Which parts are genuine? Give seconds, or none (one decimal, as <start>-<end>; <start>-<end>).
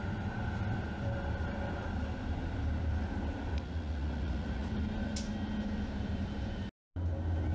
0.0-3.5; 4.7-7.5